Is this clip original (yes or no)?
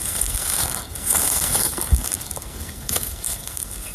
no